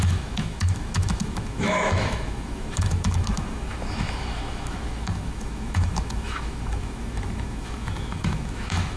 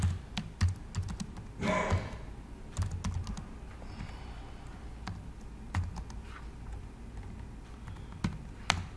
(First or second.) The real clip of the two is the second